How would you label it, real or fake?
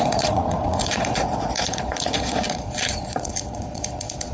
fake